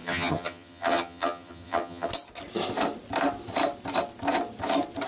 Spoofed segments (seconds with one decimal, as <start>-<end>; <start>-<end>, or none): 0.0-2.1